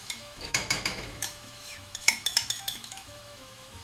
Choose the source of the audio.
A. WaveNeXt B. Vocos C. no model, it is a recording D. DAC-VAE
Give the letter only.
D